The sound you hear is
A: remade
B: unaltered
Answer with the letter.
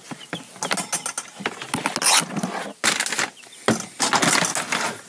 B